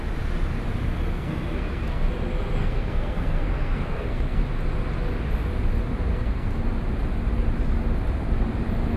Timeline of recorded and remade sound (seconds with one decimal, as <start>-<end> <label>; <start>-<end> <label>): 0.0-1.1 recorded; 1.1-2.1 remade; 2.1-2.6 recorded; 2.6-4.4 remade; 4.4-6.1 recorded; 6.1-6.6 remade; 6.6-9.0 recorded